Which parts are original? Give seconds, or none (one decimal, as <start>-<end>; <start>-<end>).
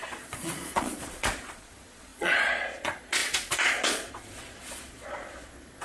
none